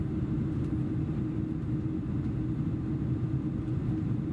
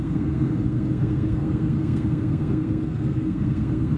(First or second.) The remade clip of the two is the second